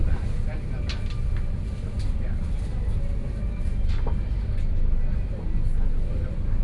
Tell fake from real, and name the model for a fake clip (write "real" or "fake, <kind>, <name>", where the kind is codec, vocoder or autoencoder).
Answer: real